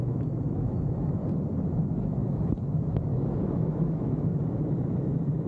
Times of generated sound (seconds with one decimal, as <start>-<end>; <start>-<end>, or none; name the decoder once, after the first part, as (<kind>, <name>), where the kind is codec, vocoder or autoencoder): 0.0-1.2 (autoencoder, DAC-VAE); 1.8-5.5